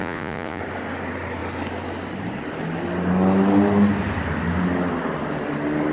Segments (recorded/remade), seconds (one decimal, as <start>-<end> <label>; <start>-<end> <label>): 0.0-0.6 remade; 0.6-5.9 recorded